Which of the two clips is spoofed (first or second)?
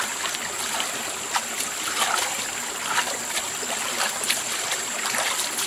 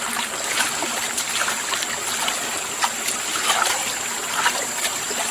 first